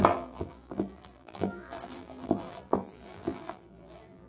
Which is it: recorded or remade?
remade